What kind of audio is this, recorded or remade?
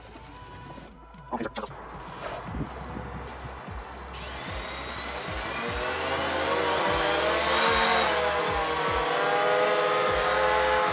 recorded